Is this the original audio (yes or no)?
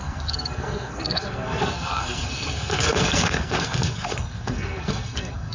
no